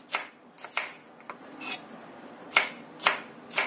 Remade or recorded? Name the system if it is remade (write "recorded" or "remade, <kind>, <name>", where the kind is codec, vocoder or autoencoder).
recorded